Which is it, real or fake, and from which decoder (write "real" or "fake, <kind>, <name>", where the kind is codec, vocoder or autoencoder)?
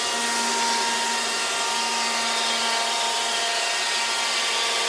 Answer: real